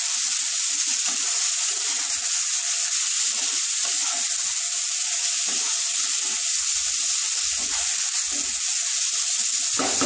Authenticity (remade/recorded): recorded